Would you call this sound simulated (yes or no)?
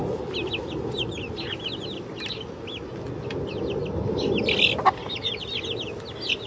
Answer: no